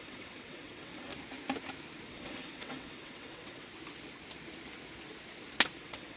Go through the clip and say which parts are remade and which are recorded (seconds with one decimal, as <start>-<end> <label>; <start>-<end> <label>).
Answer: 0.0-1.1 remade; 1.1-2.1 recorded; 2.1-3.7 remade; 3.7-5.8 recorded; 5.8-6.2 remade